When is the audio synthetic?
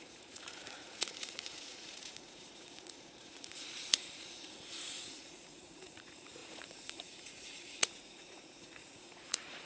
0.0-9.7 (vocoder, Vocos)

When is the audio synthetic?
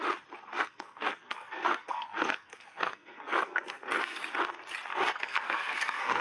0.5-4.2 (codec, SNAC); 4.9-6.2